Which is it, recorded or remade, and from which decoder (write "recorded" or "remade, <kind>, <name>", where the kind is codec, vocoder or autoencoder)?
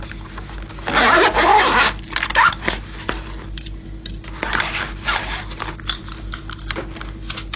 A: recorded